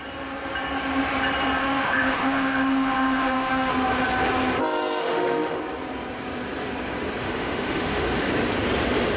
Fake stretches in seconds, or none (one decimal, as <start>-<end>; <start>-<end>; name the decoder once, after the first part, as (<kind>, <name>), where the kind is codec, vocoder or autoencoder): 1.6-3.7 (autoencoder, DAC-VAE); 5.0-5.6; 7.2-8.3